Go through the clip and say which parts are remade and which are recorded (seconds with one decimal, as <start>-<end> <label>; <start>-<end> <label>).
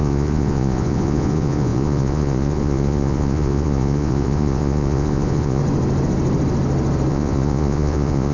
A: 0.0-5.6 remade; 5.6-7.1 recorded; 7.1-8.3 remade